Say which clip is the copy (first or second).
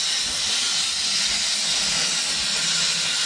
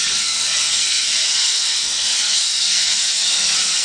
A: second